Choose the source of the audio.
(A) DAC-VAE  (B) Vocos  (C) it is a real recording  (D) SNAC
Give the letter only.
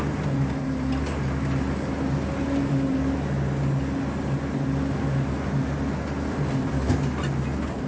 C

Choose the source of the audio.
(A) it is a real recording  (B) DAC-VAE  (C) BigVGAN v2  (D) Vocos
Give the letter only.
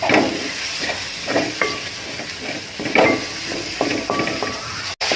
A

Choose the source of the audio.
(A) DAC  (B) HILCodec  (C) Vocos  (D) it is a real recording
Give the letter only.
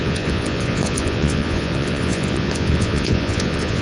C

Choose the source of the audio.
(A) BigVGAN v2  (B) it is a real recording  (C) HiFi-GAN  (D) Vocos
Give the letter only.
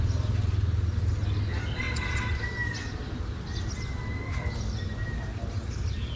B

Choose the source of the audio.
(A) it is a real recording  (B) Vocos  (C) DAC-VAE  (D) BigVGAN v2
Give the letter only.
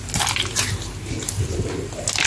A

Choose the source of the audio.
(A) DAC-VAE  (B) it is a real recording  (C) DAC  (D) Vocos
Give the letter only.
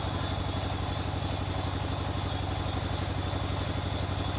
B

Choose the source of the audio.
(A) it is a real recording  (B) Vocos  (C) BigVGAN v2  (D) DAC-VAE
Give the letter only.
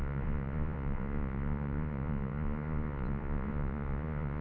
B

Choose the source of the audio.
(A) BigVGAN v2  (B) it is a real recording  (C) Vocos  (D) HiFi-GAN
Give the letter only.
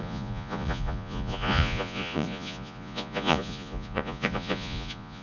C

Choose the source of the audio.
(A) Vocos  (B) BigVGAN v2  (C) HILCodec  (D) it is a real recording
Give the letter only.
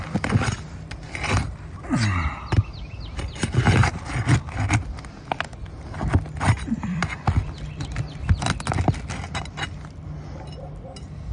D